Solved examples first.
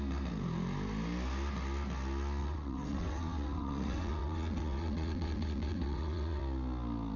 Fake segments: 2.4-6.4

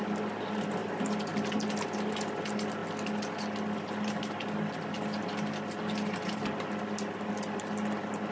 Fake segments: none

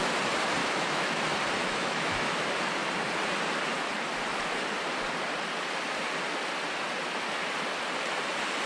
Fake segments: 0.6-1.2; 1.6-2.3

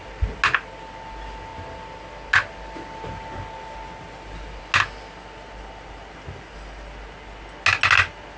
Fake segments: none

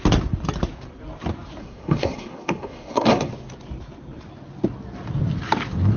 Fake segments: 1.6-3.3

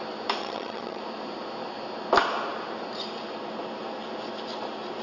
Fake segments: 0.4-1.0

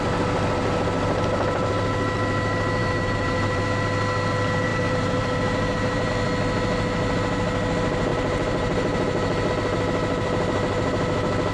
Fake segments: 2.8-3.6; 4.7-6.1; 8.1-9.5